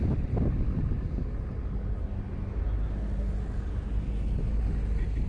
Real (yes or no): yes